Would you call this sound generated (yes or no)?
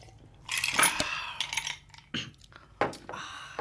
no